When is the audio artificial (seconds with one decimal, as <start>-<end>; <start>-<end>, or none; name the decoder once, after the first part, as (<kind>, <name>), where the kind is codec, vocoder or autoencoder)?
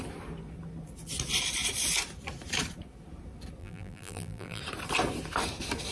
3.6-4.6 (vocoder, BigVGAN v2)